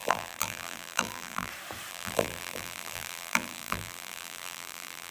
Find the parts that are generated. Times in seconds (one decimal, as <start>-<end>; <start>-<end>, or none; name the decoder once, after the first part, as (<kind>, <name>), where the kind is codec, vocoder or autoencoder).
0.0-1.5 (vocoder, BigVGAN v2); 1.9-5.1